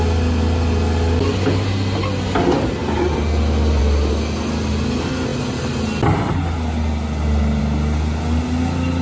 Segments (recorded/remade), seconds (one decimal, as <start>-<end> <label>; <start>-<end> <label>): 0.0-9.0 recorded